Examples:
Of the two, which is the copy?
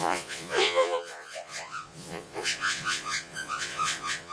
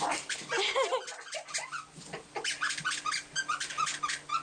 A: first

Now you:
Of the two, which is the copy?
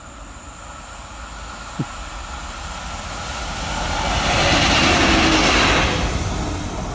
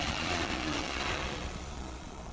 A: second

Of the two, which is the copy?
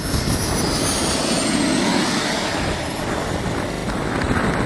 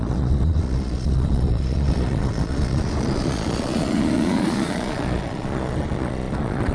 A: second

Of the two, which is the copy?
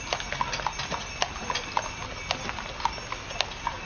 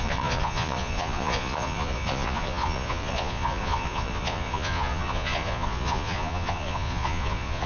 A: second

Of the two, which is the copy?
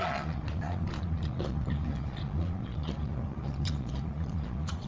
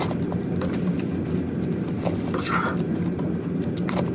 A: first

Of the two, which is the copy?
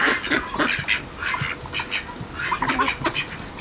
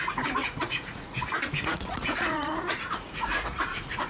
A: second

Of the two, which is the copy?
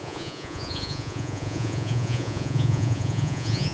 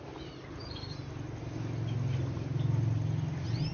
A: first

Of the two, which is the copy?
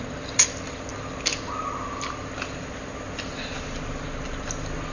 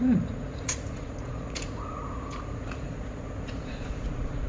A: second